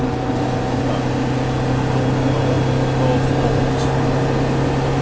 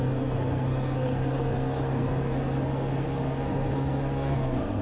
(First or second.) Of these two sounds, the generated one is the second